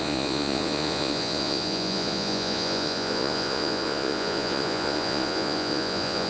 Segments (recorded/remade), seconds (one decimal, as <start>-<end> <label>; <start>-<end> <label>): 0.0-6.3 remade